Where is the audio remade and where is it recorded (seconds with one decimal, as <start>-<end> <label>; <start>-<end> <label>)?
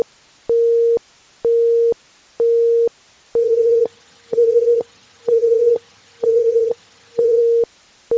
0.0-3.4 recorded; 3.4-7.4 remade; 7.4-8.2 recorded